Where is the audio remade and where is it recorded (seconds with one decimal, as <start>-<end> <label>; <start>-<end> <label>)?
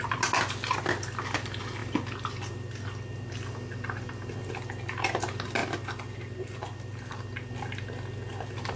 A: 0.0-8.8 recorded